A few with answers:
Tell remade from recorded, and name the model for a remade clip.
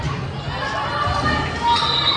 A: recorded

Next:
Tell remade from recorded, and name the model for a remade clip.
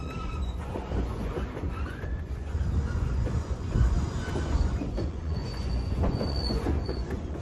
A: remade, vocoder, Vocos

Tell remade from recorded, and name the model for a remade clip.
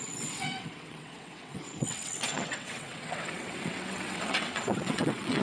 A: remade, vocoder, WaveNeXt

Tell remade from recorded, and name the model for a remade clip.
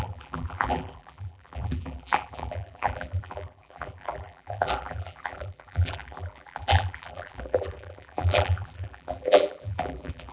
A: remade, vocoder, BigVGAN v2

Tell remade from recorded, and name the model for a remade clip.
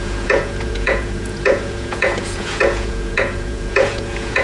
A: remade, vocoder, Vocos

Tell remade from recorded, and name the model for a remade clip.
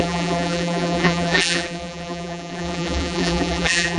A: remade, vocoder, BigVGAN v2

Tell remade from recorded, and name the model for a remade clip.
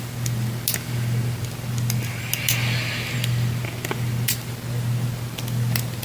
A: recorded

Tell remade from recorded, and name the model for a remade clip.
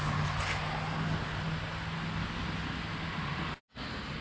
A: recorded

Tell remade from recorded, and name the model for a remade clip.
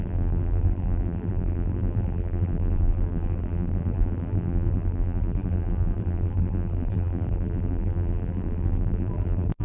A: remade, vocoder, BigVGAN v2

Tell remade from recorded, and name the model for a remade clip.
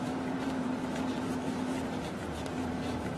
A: remade, vocoder, BigVGAN v2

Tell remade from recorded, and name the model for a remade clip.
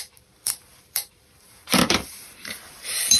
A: remade, vocoder, BigVGAN v2